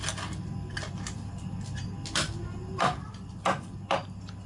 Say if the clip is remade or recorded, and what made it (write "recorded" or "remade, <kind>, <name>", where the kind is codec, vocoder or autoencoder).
recorded